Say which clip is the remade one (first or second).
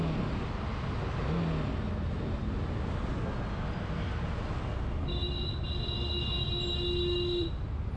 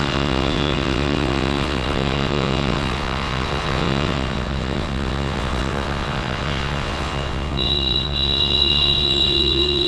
second